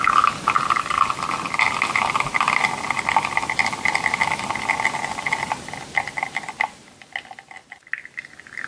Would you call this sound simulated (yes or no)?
no